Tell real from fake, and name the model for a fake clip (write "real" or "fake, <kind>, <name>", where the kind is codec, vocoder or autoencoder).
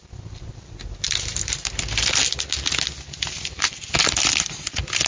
real